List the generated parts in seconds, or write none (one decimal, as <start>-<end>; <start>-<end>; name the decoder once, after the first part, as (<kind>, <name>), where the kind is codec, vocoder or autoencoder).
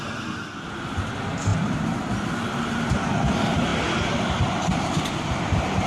none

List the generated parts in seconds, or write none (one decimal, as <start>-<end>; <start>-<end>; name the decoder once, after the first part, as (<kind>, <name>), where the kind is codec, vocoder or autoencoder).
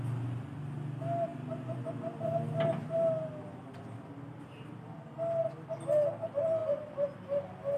none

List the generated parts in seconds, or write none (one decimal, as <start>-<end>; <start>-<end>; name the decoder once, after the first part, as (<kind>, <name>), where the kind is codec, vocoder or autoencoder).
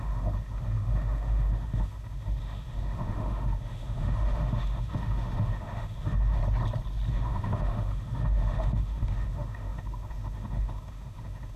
0.0-6.4 (autoencoder, DAC-VAE); 7.1-11.6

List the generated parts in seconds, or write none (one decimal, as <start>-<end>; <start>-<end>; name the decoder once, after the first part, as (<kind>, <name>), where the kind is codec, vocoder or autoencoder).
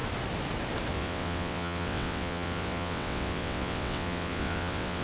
0.9-5.0 (vocoder, WaveNeXt)